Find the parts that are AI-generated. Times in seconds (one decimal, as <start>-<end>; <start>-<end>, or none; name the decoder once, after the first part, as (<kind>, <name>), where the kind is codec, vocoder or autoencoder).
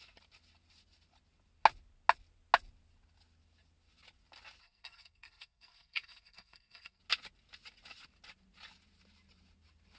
4.6-7.0 (codec, SNAC)